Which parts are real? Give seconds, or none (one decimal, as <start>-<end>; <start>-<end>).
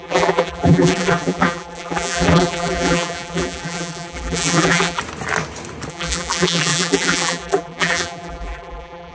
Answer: 5.0-5.9